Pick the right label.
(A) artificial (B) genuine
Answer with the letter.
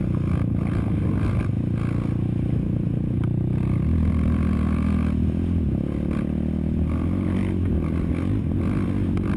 B